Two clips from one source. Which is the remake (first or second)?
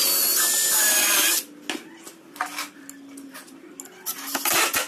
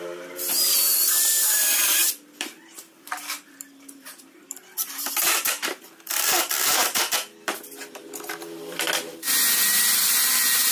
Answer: second